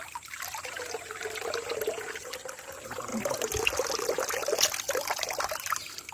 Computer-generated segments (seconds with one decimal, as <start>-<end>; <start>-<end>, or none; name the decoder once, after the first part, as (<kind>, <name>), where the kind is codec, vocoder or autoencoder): none